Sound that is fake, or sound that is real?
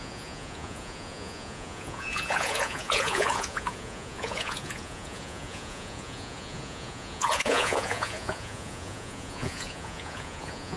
fake